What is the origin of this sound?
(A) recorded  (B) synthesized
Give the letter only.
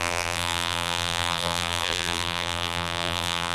B